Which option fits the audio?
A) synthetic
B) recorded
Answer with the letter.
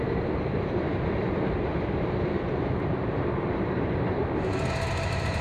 B